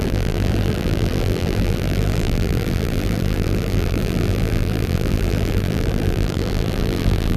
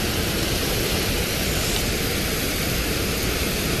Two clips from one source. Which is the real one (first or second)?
second